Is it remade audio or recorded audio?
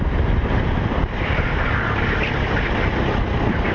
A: recorded